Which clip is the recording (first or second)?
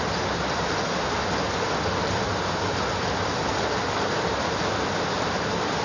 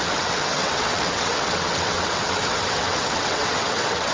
first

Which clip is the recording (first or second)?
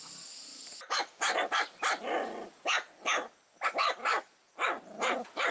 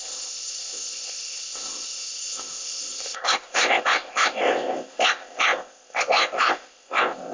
first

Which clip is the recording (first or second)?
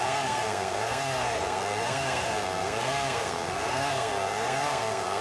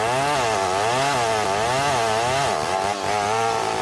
second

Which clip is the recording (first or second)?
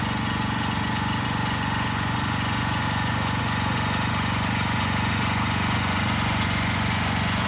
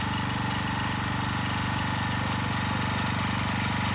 second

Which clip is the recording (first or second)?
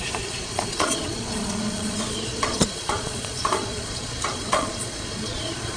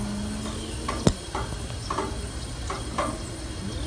second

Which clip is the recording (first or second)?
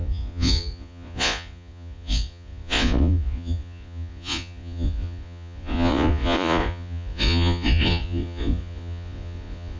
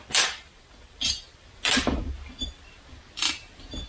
second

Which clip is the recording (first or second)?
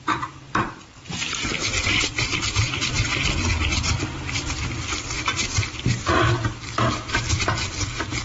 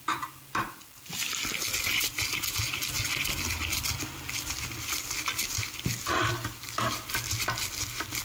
second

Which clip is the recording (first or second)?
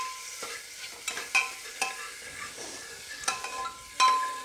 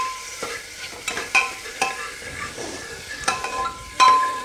first